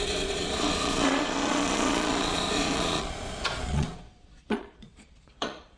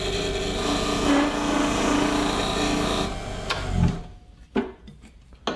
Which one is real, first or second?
second